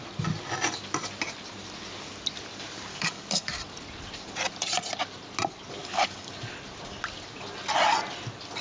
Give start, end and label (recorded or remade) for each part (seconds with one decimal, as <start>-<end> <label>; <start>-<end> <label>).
0.0-2.9 recorded; 2.9-3.5 remade; 3.5-5.8 recorded; 5.8-6.3 remade; 6.3-8.6 recorded